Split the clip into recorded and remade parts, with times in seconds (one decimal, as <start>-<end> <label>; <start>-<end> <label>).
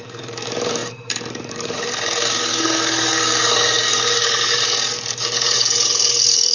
0.0-6.5 remade